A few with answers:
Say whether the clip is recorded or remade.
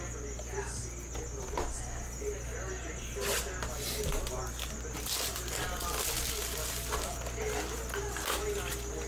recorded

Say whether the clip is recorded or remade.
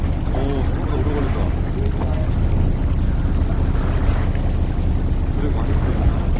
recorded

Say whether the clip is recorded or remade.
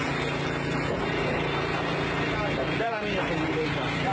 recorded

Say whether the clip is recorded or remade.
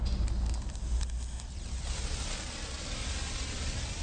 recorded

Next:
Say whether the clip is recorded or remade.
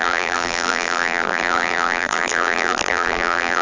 remade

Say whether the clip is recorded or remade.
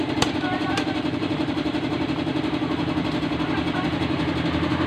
remade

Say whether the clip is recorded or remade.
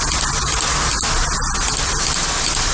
recorded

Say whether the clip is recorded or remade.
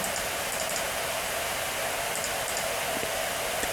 remade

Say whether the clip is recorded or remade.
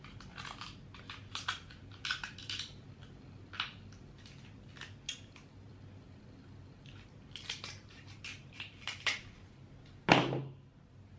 recorded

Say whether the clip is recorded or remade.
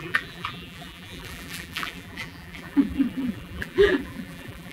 remade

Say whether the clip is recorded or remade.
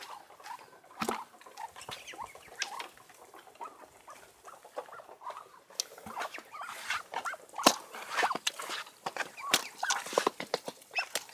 recorded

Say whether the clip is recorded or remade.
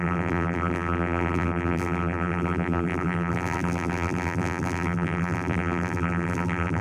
remade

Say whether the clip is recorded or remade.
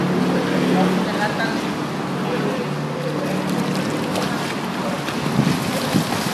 recorded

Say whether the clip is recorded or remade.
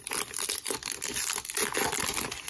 recorded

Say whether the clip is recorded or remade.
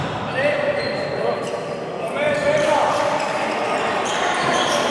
remade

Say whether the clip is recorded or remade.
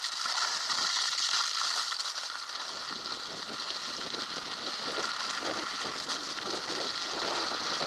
recorded